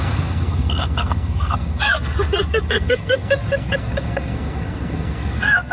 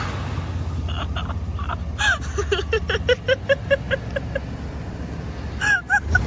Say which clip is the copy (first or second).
first